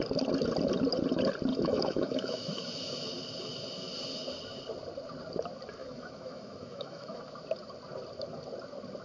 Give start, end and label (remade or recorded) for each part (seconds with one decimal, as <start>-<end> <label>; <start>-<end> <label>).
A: 0.0-1.5 recorded; 1.5-2.9 remade; 2.9-5.8 recorded; 5.8-7.2 remade; 7.2-9.0 recorded